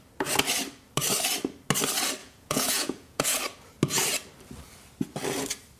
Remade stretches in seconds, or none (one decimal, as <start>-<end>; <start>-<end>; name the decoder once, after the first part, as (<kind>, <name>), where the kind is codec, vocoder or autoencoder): 2.2-3.4 (vocoder, Vocos)